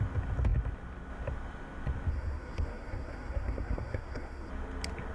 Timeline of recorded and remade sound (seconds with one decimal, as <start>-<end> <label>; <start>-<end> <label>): 0.0-2.1 recorded; 2.1-4.5 remade; 4.5-5.1 recorded